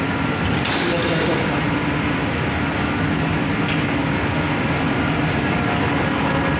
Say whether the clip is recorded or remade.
recorded